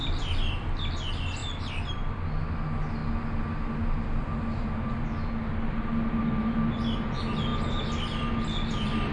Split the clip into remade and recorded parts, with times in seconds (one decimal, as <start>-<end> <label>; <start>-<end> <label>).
0.0-9.1 recorded